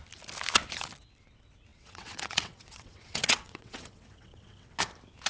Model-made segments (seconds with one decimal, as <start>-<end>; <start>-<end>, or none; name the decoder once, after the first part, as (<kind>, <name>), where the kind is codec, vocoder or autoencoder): 1.7-4.8 (vocoder, WaveNeXt)